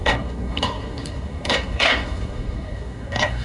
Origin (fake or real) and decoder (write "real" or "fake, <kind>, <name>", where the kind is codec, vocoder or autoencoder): fake, codec, SNAC